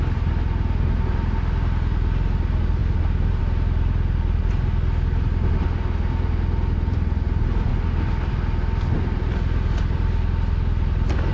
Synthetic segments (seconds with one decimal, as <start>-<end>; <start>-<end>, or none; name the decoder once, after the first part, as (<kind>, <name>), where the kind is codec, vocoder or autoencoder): none